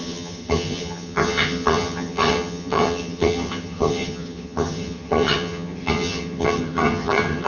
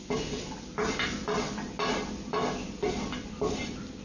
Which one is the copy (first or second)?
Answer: first